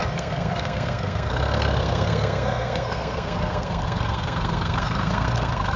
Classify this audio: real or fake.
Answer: fake